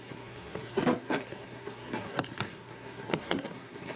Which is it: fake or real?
fake